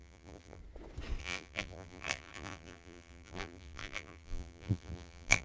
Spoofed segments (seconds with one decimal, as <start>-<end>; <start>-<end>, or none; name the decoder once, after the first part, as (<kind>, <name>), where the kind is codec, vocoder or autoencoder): 0.0-0.6 (vocoder, BigVGAN v2); 1.2-5.4